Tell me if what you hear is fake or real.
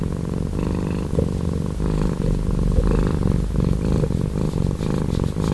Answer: real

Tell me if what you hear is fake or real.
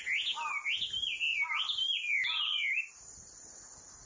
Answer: real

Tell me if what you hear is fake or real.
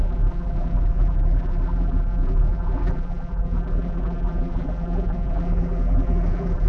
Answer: fake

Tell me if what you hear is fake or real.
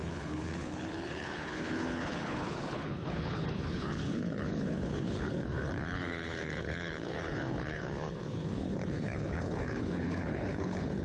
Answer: fake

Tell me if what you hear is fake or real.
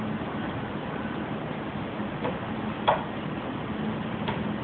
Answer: real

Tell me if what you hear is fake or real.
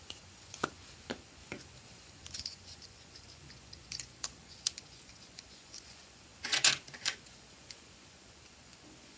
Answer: fake